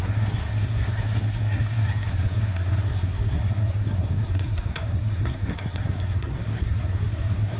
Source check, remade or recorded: remade